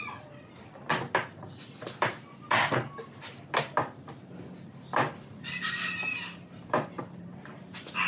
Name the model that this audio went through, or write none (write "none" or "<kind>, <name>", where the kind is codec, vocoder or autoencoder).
none